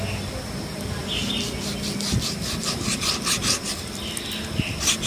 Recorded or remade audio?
recorded